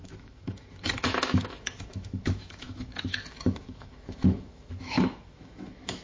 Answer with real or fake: fake